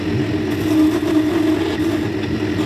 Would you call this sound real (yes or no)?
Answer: yes